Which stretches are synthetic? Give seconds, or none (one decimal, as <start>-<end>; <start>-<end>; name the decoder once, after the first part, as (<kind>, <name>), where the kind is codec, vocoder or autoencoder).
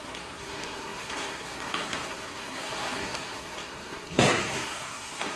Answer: 0.0-5.4 (codec, SNAC)